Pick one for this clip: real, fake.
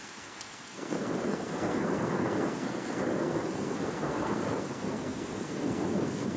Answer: fake